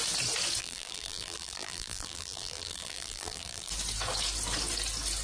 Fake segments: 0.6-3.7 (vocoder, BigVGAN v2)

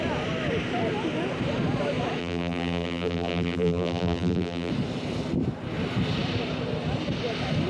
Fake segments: 2.2-4.7 (vocoder, BigVGAN v2)

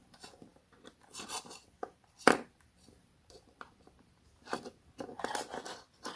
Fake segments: 0.5-4.2 (vocoder, BigVGAN v2)

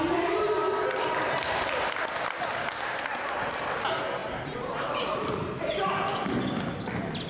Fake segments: 4.2-6.4 (vocoder, BigVGAN v2)

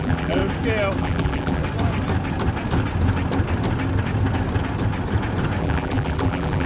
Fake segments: 0.0-0.4 (vocoder, BigVGAN v2); 1.0-1.6; 5.6-6.7